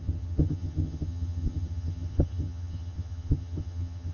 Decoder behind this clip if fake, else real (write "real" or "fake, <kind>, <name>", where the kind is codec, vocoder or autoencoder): fake, vocoder, HiFi-GAN